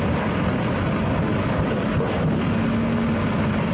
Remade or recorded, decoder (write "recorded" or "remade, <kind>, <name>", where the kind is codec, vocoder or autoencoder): recorded